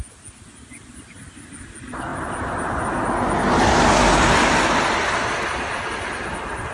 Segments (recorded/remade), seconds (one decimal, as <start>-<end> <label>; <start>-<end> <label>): 0.0-6.7 recorded